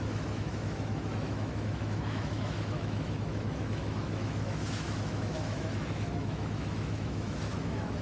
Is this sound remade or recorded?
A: remade